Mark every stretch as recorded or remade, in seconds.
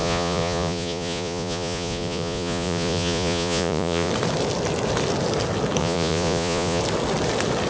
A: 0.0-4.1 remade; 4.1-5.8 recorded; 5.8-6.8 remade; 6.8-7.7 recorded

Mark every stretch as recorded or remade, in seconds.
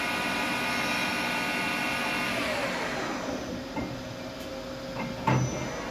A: 0.0-5.9 recorded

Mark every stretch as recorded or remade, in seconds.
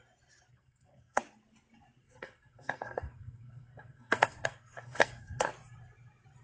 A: 0.0-0.5 recorded; 0.5-1.2 remade; 1.2-2.0 recorded; 2.0-5.5 remade; 5.5-6.4 recorded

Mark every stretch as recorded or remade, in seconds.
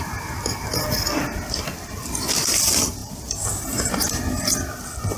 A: 0.0-5.2 recorded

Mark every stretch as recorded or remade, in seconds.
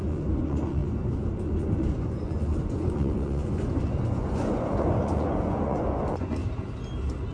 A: 0.0-6.4 remade; 6.4-7.3 recorded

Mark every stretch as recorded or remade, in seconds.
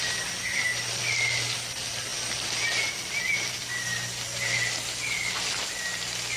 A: 0.0-6.4 recorded